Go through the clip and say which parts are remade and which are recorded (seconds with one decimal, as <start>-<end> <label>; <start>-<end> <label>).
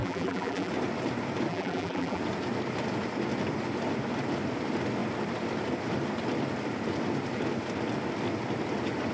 0.0-0.7 remade; 0.7-1.5 recorded; 1.5-2.2 remade; 2.2-9.1 recorded